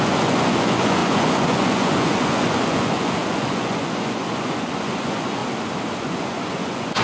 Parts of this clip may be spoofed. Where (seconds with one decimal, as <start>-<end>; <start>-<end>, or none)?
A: 0.0-5.4; 6.0-7.0

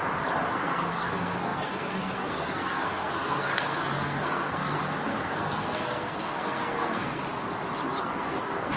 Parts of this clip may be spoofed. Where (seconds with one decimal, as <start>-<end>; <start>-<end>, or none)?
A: 0.5-7.2; 7.9-8.8

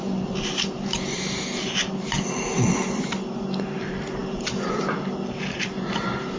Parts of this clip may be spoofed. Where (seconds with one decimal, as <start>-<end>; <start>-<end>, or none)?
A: none